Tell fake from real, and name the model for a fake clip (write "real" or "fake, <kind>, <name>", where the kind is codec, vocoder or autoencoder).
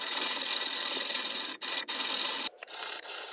fake, vocoder, BigVGAN v2